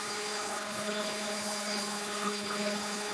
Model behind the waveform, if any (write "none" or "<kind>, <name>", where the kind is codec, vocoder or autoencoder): codec, HILCodec